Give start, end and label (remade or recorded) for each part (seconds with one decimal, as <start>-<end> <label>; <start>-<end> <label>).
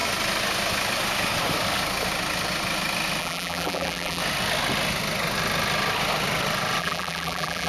0.0-3.2 recorded; 3.2-4.2 remade; 4.2-6.8 recorded; 6.8-7.7 remade